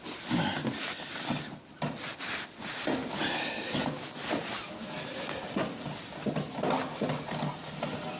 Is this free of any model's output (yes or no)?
yes